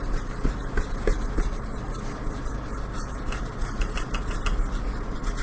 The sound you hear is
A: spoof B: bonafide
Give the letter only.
B